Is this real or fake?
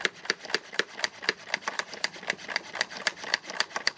real